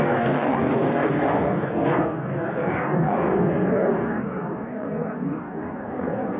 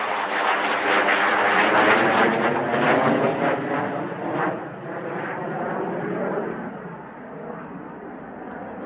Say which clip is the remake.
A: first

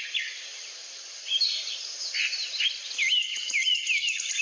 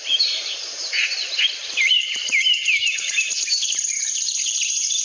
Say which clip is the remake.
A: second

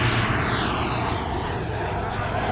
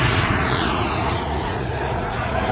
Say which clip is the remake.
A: second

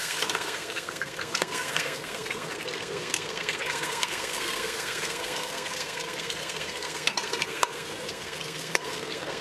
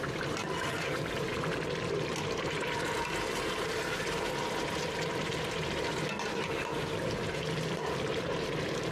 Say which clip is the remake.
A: first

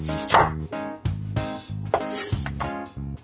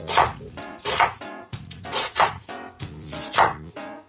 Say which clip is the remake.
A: second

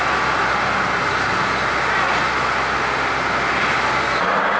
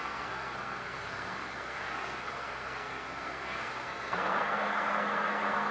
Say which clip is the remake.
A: second